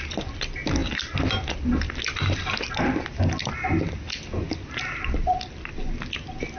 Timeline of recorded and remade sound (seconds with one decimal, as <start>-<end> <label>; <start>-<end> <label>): 0.0-6.6 recorded